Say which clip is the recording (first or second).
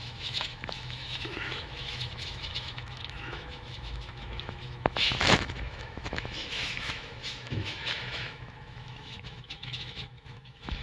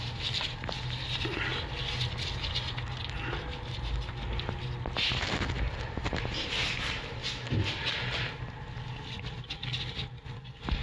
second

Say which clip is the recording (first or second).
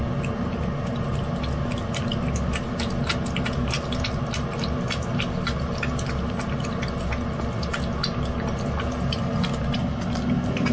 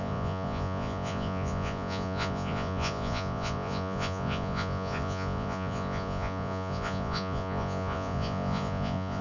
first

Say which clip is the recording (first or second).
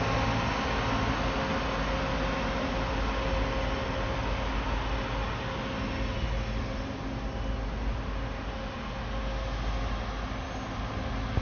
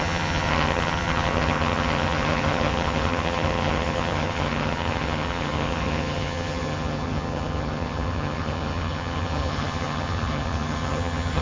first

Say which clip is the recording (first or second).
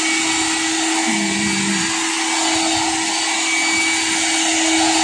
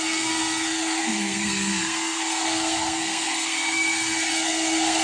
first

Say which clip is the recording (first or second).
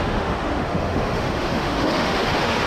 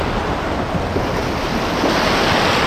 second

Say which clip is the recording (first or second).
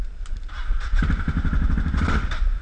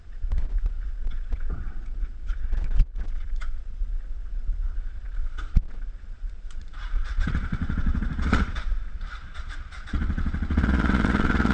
first